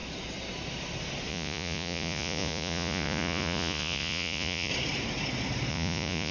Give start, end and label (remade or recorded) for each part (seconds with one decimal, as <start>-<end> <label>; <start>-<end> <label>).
0.0-1.3 recorded; 1.3-4.7 remade; 4.7-5.7 recorded; 5.7-6.3 remade